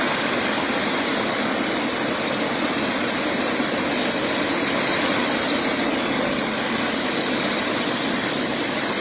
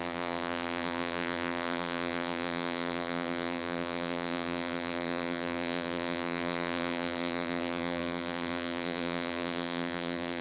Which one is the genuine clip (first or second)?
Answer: first